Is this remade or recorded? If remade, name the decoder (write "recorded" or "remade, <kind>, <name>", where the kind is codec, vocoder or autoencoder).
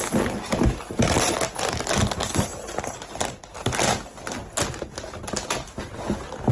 recorded